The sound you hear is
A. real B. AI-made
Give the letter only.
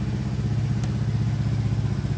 A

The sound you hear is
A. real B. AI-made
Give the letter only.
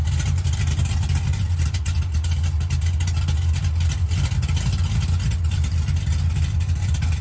A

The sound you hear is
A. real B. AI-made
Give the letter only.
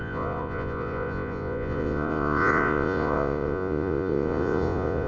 B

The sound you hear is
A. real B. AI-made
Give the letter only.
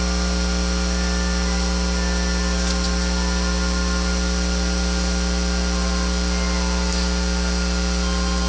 A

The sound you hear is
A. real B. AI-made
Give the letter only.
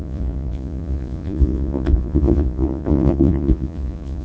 B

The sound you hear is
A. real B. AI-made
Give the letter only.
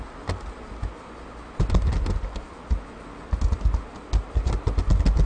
A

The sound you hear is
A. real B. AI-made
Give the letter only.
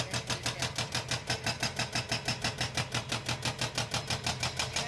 A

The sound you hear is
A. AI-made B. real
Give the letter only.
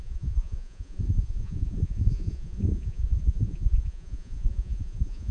A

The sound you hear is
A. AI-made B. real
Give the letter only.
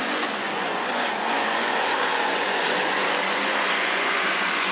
A